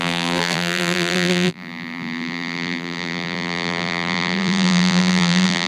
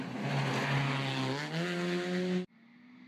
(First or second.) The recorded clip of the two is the second